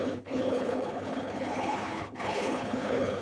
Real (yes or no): no